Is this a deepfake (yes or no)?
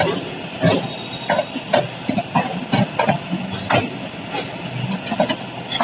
no